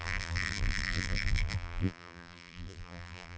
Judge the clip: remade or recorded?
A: remade